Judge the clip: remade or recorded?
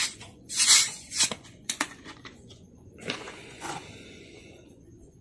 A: remade